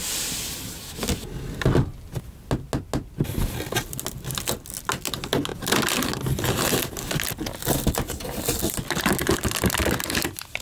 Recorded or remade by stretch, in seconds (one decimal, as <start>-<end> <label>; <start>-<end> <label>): 0.0-10.6 recorded